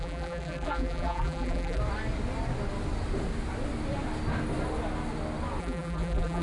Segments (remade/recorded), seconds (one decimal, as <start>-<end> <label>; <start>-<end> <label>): 0.0-1.8 remade; 1.8-5.6 recorded; 5.6-6.4 remade